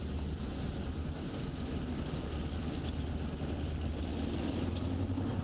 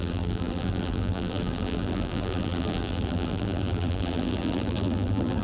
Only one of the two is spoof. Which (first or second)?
second